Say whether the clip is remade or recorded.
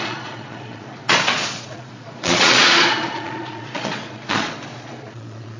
remade